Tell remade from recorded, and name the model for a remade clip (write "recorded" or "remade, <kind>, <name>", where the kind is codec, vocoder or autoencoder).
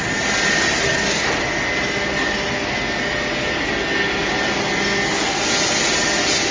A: recorded